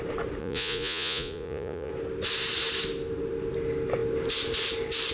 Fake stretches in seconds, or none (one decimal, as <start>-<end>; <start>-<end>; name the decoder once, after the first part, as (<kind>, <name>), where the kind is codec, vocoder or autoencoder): 0.4-1.9 (vocoder, Vocos)